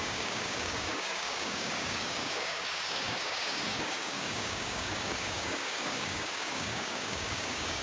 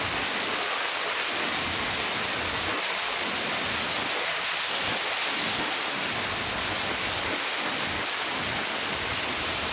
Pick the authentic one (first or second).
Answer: second